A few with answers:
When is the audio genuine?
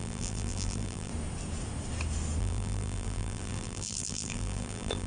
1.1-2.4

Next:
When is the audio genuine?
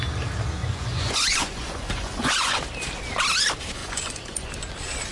0.0-0.6; 2.6-3.8; 4.5-5.1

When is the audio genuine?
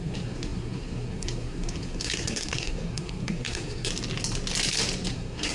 3.9-5.1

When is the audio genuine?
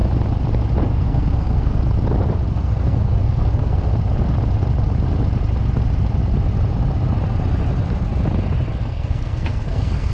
0.0-0.8; 1.8-2.5; 3.9-8.8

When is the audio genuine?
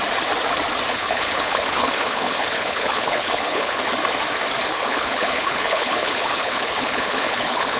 0.0-0.9; 3.8-4.7